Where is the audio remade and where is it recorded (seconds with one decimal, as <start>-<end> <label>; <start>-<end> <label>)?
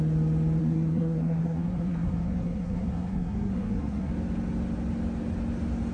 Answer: 0.0-0.6 recorded; 0.6-4.1 remade; 4.1-5.9 recorded